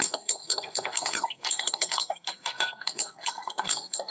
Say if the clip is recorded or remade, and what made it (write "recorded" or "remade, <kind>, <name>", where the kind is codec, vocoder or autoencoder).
remade, codec, SNAC